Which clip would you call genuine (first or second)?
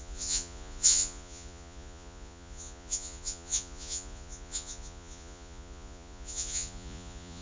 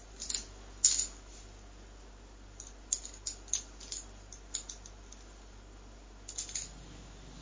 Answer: second